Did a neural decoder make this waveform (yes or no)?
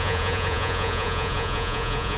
yes